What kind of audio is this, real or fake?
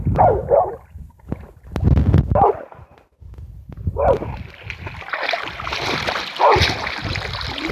real